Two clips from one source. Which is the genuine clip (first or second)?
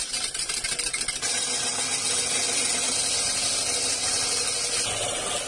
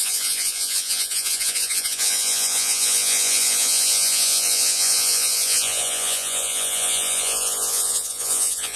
first